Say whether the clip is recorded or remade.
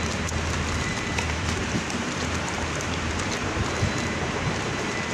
remade